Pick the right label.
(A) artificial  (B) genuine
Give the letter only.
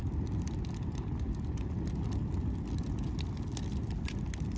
B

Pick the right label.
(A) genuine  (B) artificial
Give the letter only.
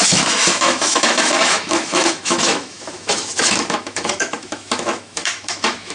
B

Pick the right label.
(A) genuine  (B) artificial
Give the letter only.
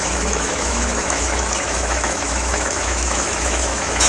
B